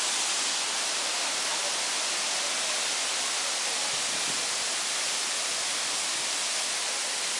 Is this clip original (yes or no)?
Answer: yes